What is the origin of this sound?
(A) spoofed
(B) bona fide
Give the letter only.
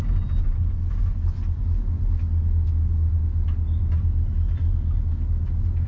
B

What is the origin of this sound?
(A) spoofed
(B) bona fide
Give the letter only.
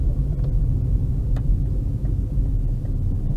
B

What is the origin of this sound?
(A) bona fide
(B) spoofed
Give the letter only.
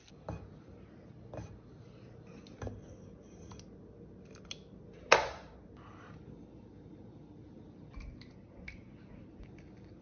A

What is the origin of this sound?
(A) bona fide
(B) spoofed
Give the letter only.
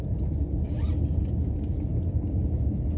A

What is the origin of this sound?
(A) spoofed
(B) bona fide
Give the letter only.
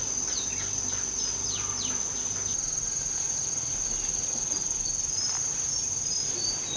B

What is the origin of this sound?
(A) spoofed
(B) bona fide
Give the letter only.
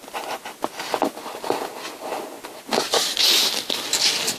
B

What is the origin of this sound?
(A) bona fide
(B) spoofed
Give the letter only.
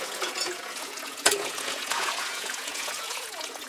B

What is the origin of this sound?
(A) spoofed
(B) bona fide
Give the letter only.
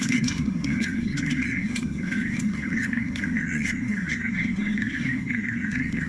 A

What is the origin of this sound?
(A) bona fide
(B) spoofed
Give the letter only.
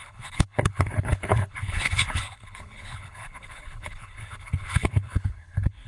B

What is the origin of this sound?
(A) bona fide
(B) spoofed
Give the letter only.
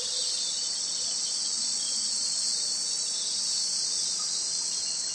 A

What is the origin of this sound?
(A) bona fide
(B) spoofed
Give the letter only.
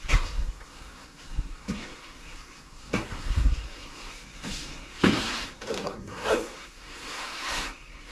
B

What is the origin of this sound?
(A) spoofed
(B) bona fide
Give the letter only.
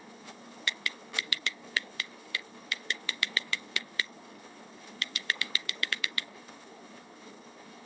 A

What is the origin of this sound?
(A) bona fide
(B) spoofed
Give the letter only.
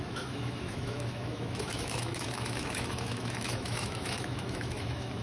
B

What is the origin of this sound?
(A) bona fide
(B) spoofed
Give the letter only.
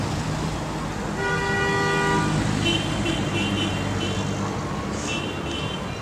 A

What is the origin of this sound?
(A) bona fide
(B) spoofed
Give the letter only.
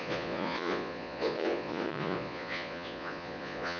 B